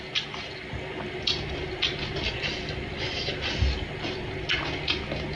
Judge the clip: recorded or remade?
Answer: recorded